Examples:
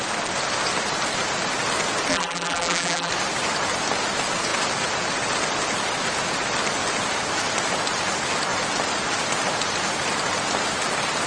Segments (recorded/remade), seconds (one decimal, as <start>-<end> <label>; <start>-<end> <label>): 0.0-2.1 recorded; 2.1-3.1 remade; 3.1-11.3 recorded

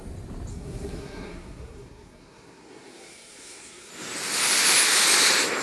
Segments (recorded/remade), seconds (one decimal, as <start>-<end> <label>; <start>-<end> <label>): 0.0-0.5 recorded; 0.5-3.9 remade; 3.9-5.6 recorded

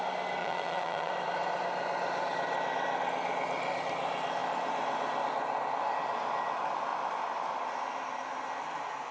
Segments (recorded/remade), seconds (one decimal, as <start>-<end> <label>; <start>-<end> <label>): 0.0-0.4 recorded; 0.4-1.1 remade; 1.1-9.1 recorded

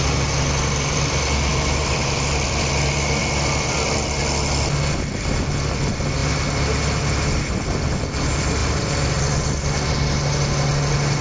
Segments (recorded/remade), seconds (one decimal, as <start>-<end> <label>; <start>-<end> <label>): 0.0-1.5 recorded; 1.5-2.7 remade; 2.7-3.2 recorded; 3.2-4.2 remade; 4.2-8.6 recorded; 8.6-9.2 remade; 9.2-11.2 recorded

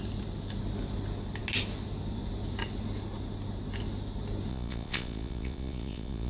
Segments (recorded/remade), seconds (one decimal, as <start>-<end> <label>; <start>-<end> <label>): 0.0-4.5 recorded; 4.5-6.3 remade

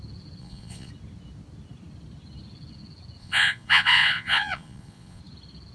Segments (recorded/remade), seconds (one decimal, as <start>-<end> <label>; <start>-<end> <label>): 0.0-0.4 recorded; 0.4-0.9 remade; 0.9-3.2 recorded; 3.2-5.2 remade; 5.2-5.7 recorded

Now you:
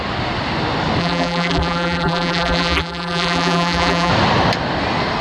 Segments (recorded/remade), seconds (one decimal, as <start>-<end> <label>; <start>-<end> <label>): 0.0-1.0 recorded; 1.0-4.1 remade; 4.1-5.2 recorded

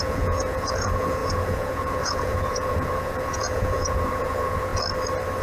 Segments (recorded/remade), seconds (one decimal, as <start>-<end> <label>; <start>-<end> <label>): 0.0-4.7 remade; 4.7-5.4 recorded